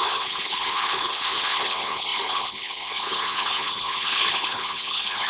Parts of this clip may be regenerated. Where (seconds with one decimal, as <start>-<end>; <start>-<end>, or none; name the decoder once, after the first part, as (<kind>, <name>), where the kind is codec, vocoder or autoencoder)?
0.0-5.3 (codec, HILCodec)